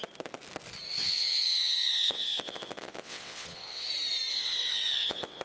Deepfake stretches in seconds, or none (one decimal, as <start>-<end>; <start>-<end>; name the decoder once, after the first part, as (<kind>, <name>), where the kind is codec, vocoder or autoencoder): 1.0-3.9 (vocoder, WaveNeXt); 4.3-5.4